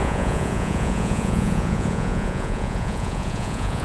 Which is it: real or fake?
fake